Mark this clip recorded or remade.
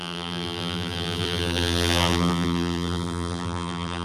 remade